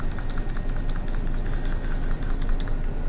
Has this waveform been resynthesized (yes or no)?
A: no